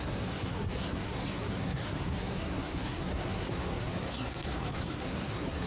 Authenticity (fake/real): fake